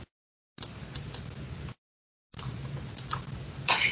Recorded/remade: recorded